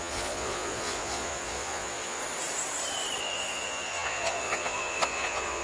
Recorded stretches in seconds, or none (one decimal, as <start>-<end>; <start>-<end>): 2.2-3.2